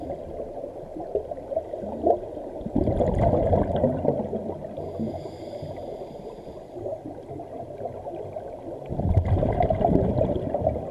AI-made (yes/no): no